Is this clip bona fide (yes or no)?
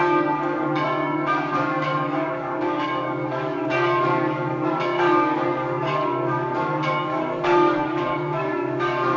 no